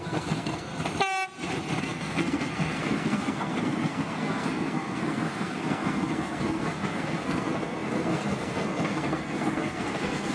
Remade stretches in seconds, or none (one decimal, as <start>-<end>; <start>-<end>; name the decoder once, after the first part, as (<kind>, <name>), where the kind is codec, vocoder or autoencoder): 0.0-0.7 (codec, SNAC); 1.8-10.3